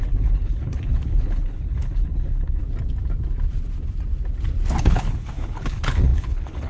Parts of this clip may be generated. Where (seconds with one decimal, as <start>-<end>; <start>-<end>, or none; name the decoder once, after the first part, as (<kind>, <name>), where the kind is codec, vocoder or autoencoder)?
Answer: 0.0-2.6 (codec, HILCodec); 4.8-6.7